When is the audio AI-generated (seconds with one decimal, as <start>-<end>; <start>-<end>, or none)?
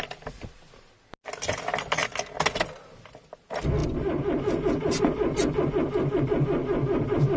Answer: none